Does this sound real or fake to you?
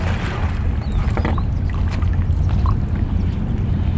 real